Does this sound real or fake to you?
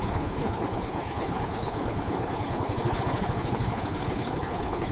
fake